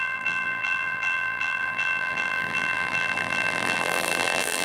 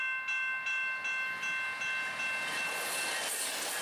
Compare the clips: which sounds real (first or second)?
second